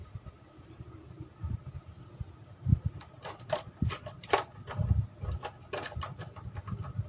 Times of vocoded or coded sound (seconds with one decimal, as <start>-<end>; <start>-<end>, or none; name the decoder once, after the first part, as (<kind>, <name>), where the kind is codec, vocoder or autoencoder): 0.0-2.0 (vocoder, BigVGAN v2)